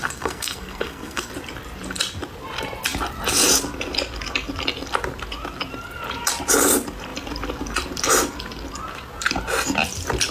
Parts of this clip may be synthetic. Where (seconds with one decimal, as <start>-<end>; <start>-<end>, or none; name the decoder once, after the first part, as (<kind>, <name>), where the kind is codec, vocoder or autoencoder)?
0.0-1.3 (codec, SNAC)